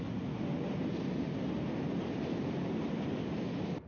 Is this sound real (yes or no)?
yes